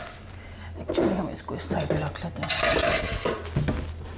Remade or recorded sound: recorded